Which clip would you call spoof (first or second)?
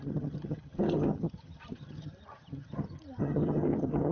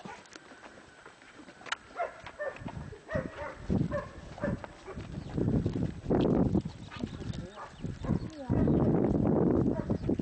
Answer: first